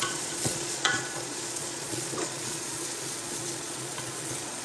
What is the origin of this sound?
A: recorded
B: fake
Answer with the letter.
B